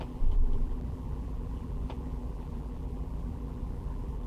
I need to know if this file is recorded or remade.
remade